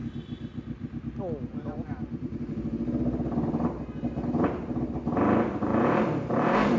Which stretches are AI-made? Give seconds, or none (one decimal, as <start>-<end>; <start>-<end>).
1.5-2.4; 5.7-6.8